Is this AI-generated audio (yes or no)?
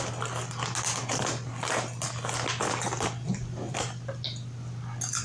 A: no